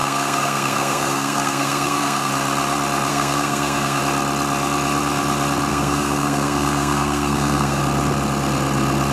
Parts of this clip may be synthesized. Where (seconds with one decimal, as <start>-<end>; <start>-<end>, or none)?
0.0-2.3; 3.1-4.0; 5.7-7.8